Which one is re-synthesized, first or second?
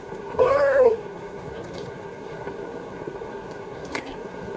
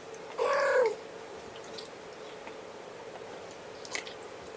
first